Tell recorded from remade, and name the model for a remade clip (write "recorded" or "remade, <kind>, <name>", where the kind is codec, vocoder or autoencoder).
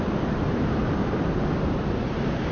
recorded